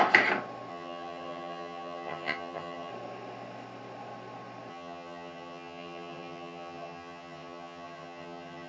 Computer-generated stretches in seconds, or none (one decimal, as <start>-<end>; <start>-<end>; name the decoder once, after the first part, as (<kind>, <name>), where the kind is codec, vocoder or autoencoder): 0.7-2.9 (vocoder, HiFi-GAN); 4.7-8.7